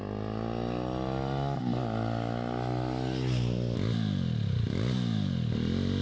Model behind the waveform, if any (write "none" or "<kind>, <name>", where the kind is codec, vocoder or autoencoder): none